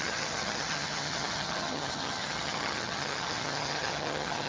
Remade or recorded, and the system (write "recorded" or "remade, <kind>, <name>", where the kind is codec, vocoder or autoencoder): remade, vocoder, HiFi-GAN